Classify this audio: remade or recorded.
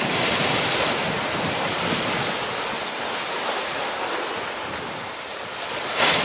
recorded